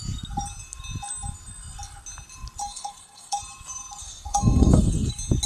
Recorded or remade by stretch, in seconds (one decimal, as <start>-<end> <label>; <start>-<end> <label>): 0.0-2.6 recorded; 2.6-3.4 remade; 3.4-4.0 recorded; 4.0-5.1 remade; 5.1-5.5 recorded